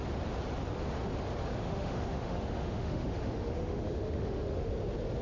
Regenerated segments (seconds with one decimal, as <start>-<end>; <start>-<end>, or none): 1.6-4.7